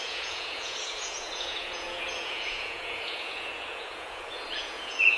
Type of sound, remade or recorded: remade